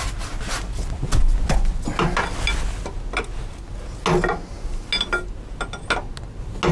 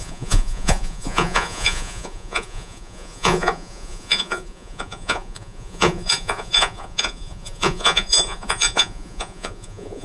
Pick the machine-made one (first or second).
second